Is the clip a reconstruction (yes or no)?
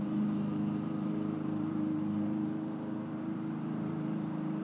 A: yes